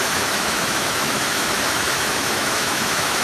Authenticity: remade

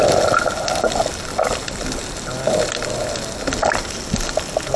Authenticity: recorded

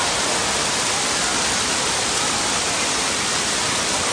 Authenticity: recorded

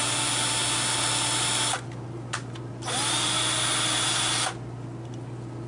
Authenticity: recorded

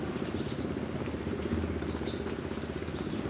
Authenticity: recorded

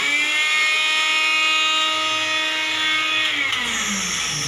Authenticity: recorded